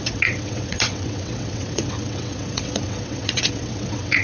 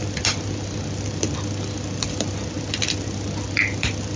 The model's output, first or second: first